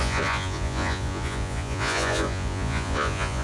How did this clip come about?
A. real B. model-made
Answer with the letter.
B